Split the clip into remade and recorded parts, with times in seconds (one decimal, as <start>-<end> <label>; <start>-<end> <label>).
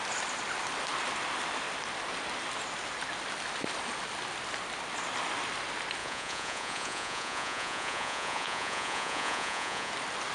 0.0-6.0 recorded; 6.0-9.9 remade; 9.9-10.3 recorded